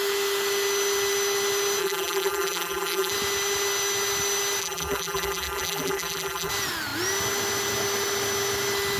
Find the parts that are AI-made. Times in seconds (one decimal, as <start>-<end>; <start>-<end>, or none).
1.8-3.1; 4.6-6.5